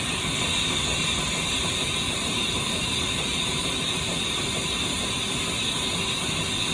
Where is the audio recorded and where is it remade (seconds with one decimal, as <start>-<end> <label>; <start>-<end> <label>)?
0.0-0.9 recorded; 0.9-4.0 remade; 4.0-6.7 recorded